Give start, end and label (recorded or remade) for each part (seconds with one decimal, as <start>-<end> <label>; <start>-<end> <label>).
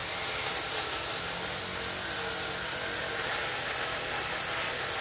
0.0-3.0 recorded; 3.0-3.4 remade; 3.4-5.0 recorded